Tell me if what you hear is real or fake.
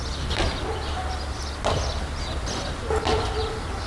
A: real